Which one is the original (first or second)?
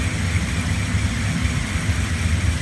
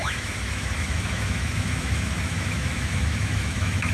first